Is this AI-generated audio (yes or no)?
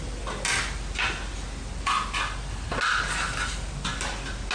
no